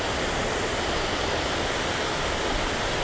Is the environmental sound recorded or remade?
recorded